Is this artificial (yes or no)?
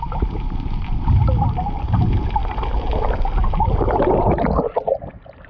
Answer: no